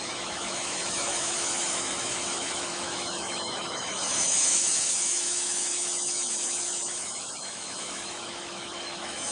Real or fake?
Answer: fake